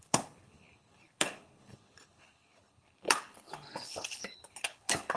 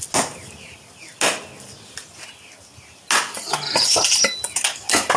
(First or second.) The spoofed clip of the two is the first